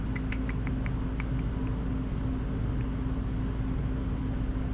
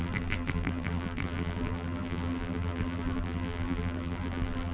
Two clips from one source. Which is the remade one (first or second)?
second